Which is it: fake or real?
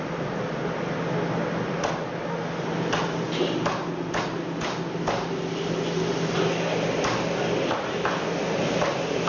real